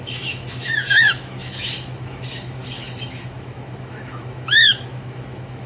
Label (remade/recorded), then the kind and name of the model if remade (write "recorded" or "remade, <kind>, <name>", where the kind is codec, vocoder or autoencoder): remade, autoencoder, DAC-VAE